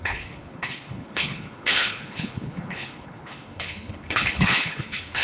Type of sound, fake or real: fake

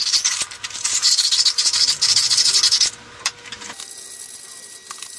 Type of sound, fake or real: real